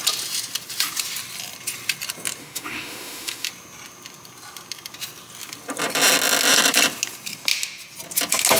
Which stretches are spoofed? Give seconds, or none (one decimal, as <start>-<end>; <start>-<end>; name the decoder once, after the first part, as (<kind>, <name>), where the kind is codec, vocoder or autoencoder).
2.4-3.5 (autoencoder, DAC-VAE)